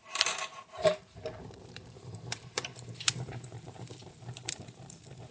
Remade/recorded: remade